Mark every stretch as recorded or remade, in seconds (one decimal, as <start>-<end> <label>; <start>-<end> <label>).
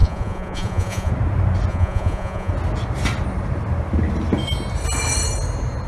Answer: 0.0-1.1 remade; 1.1-1.7 recorded; 1.7-2.5 remade; 2.5-5.9 recorded